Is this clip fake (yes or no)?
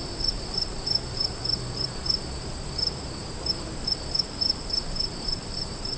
yes